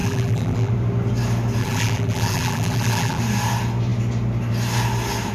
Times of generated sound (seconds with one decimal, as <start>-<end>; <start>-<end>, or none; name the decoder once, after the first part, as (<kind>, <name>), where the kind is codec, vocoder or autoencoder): 0.0-0.7 (vocoder, BigVGAN v2); 1.6-3.2